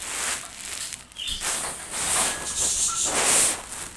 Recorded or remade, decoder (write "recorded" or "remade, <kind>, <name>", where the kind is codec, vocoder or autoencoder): recorded